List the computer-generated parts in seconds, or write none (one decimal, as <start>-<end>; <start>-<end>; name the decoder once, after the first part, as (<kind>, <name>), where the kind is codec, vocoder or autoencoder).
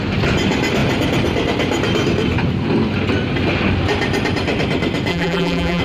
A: 5.1-5.8 (vocoder, BigVGAN v2)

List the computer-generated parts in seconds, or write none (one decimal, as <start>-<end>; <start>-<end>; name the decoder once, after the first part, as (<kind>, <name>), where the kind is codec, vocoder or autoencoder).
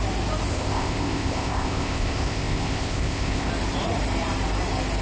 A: 0.5-3.5 (codec, ZipCodec)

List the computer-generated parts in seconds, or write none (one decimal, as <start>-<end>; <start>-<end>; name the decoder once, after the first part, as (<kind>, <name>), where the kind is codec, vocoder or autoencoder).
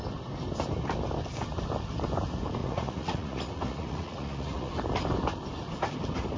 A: 2.6-4.7 (vocoder, Vocos)